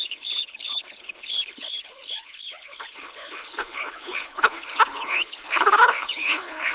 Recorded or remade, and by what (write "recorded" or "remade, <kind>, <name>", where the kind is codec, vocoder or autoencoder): remade, codec, HILCodec